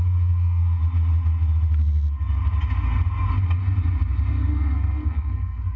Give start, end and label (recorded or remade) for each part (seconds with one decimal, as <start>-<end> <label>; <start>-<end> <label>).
0.0-0.8 remade; 0.8-4.3 recorded; 4.3-5.8 remade